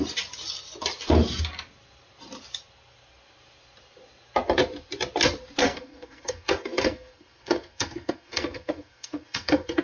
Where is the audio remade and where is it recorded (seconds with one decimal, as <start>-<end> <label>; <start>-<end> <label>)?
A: 0.0-5.6 recorded; 5.6-9.8 remade